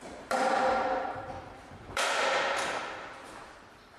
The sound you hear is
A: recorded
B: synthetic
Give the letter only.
B